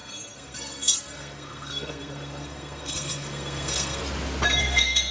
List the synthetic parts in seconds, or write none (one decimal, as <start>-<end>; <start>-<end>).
0.0-4.0; 4.6-5.1